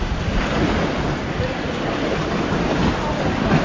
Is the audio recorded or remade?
recorded